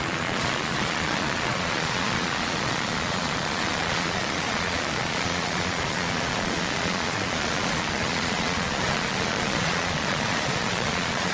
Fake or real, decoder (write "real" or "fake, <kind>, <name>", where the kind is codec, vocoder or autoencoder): fake, vocoder, Vocos